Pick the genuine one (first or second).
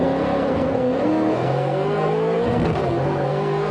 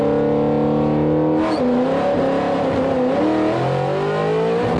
second